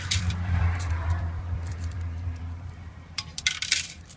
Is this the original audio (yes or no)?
no